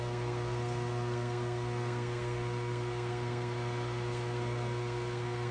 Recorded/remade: remade